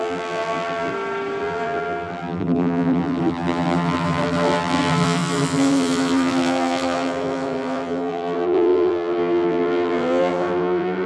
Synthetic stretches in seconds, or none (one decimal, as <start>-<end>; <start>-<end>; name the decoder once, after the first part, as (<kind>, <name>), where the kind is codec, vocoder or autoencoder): 0.0-0.9 (vocoder, BigVGAN v2); 1.4-11.1